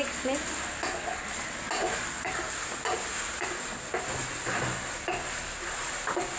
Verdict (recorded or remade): recorded